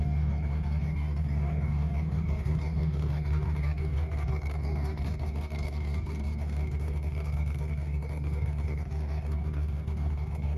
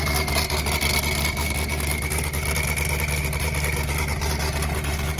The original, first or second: second